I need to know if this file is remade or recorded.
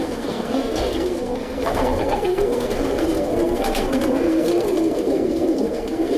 remade